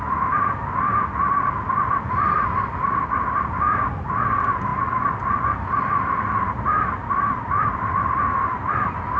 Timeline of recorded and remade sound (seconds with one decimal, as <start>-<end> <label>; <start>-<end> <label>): 0.0-9.2 recorded